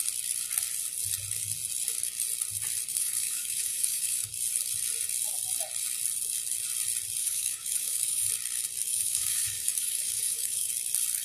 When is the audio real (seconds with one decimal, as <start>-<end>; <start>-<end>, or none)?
0.0-2.9; 4.3-7.2; 8.3-8.9; 10.7-11.2